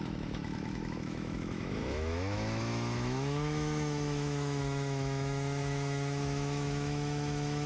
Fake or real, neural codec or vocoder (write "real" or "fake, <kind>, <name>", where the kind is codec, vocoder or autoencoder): fake, autoencoder, DAC-VAE